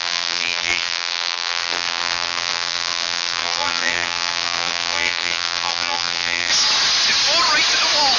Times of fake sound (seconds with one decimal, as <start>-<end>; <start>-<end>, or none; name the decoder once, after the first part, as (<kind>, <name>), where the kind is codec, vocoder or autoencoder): 0.0-6.5 (vocoder, BigVGAN v2)